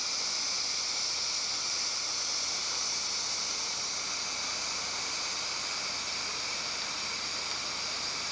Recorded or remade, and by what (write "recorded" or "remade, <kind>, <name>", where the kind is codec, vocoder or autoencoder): recorded